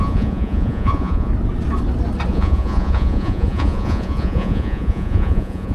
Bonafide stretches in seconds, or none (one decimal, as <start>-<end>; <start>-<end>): 1.3-2.3